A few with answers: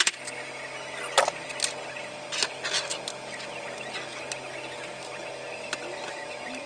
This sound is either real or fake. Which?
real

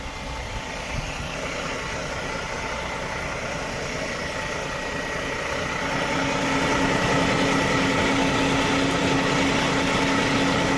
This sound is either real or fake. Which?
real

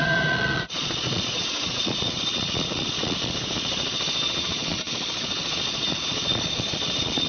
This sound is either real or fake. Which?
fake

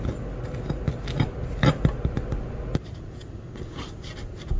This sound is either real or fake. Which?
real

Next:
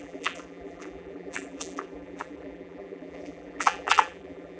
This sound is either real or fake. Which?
fake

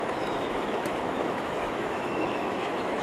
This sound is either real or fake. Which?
fake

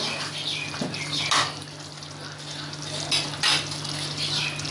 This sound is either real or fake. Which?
real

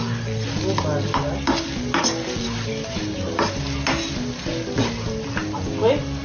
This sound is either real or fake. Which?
real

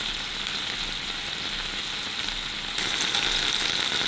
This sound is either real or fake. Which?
real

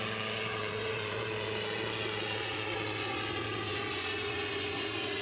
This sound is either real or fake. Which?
fake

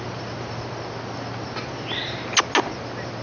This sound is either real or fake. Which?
real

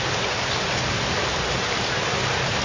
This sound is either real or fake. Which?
real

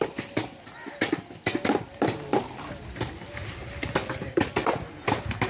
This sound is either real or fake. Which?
real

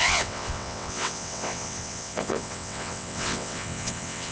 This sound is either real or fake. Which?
fake